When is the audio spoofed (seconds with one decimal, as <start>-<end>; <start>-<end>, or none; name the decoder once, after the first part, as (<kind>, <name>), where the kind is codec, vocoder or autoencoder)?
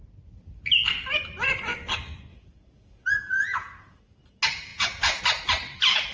2.3-4.0 (vocoder, Vocos); 4.7-5.2